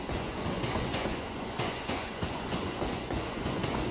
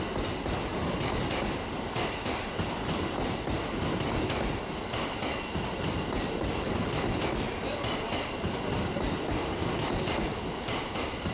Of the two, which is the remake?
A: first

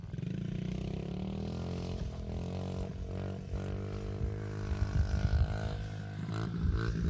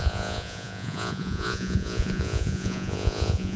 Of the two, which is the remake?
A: second